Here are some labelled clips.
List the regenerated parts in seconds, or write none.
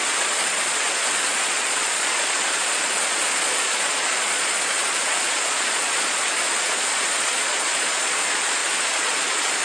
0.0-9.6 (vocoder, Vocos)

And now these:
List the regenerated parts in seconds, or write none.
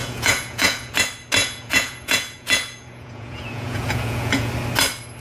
0.0-0.9 (vocoder, Vocos); 1.4-4.5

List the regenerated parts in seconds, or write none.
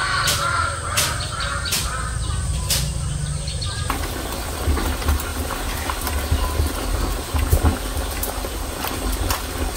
5.3-6.1 (vocoder, BigVGAN v2); 7.7-8.8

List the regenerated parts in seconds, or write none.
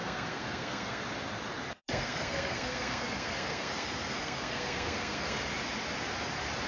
0.0-1.0 (codec, SNAC); 1.8-5.4